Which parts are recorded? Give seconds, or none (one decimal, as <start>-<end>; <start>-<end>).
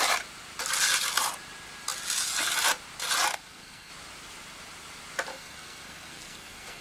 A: 0.0-3.3; 3.9-5.3